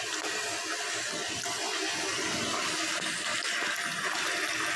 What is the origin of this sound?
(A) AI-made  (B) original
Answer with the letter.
B